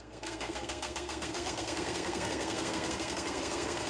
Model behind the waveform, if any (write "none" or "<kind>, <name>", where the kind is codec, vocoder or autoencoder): codec, SNAC